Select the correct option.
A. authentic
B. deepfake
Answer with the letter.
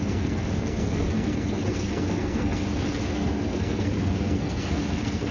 B